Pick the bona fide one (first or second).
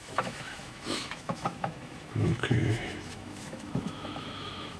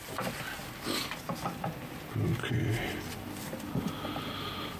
second